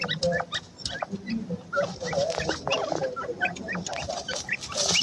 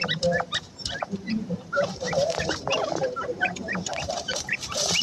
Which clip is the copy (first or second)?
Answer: second